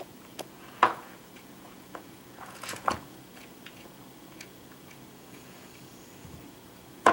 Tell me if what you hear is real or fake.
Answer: fake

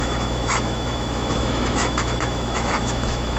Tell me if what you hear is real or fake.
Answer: fake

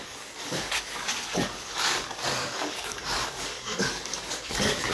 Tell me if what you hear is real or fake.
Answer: fake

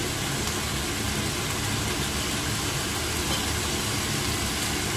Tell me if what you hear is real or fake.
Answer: real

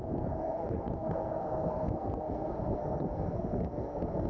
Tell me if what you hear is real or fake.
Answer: fake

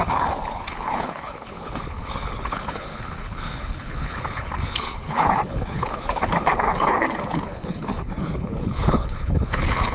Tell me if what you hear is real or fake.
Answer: fake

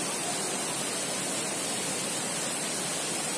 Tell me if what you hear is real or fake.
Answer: real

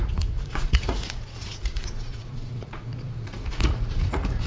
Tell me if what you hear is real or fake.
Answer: fake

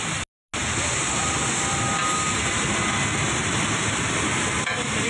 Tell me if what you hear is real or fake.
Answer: real